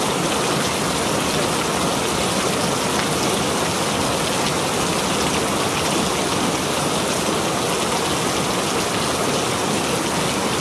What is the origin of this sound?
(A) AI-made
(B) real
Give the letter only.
B